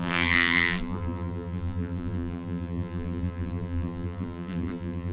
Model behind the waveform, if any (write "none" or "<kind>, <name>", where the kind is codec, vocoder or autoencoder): vocoder, BigVGAN v2